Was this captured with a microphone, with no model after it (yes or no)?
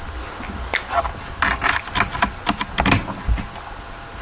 yes